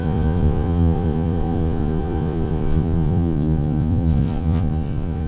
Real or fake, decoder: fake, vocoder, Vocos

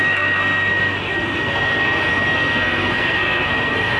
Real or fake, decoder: fake, codec, SNAC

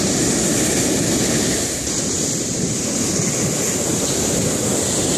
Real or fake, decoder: real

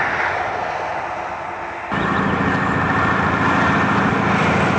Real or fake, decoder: real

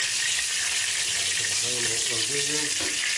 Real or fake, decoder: real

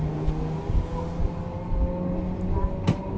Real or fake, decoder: real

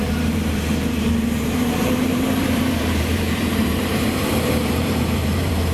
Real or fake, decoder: fake, vocoder, BigVGAN v2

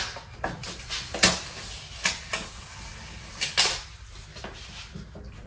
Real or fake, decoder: real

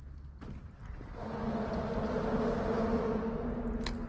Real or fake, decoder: real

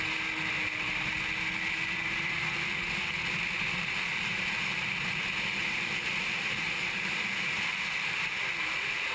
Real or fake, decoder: real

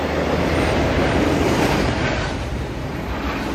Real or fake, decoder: real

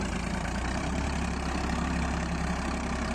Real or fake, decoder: fake, vocoder, BigVGAN v2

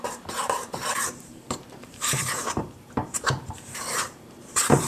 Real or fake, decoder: fake, vocoder, BigVGAN v2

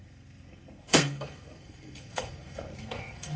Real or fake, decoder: fake, codec, SNAC